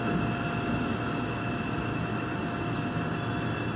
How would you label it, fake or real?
real